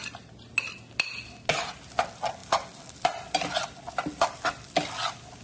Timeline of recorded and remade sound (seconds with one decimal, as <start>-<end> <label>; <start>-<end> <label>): 0.0-5.4 recorded